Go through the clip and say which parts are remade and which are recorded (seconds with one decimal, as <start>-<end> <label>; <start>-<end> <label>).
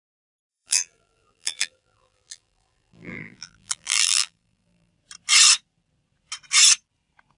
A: 0.0-0.5 recorded; 0.5-4.9 remade; 4.9-7.4 recorded